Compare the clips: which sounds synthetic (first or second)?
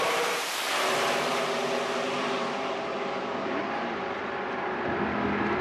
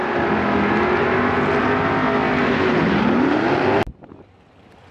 first